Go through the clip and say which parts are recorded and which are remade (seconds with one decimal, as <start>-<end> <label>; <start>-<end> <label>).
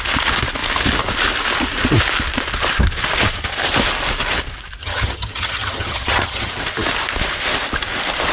0.0-4.8 recorded; 4.8-6.5 remade; 6.5-8.3 recorded